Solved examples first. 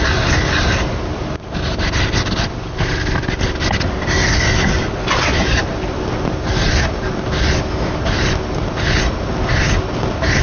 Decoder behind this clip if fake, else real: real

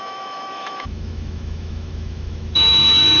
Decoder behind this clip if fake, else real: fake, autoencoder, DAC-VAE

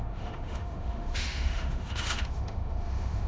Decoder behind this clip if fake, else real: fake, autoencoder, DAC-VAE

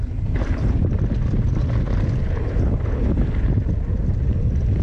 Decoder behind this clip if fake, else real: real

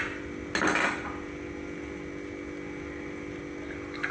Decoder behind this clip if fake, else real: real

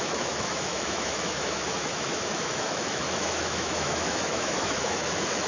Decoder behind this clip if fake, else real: fake, autoencoder, DAC-VAE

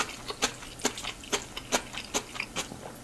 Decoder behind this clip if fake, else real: real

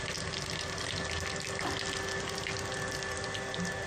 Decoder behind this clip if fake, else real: real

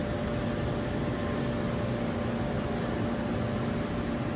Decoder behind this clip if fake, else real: real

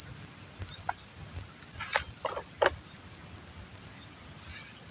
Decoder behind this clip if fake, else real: real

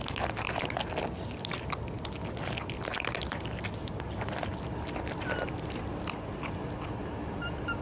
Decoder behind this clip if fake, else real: real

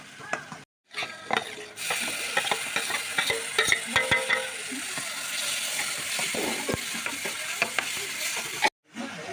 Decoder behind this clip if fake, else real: real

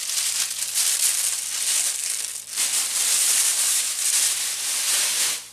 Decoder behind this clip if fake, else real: real